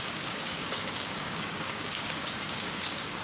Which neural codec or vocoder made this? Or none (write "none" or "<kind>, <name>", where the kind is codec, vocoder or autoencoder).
codec, DAC